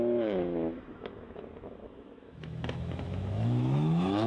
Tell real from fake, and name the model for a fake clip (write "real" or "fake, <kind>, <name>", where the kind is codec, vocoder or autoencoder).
fake, autoencoder, DAC-VAE